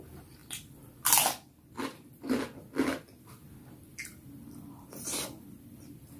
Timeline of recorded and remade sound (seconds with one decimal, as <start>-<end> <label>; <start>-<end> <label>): 0.0-0.4 remade; 0.4-1.7 recorded; 1.7-3.4 remade; 3.4-4.0 recorded; 4.0-6.2 remade